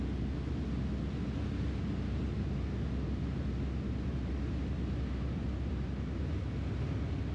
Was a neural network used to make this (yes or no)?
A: no